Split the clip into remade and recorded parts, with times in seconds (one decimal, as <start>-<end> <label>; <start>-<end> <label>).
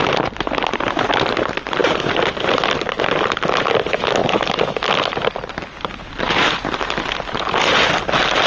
0.0-8.5 recorded